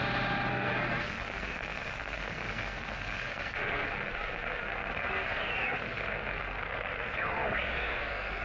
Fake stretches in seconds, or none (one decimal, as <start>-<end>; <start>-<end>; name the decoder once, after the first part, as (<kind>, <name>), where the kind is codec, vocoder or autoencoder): 0.5-8.4 (codec, SNAC)